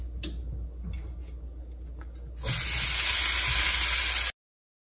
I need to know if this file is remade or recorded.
recorded